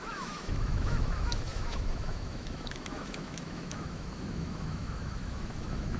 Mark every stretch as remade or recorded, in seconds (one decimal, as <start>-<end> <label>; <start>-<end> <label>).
0.0-6.0 remade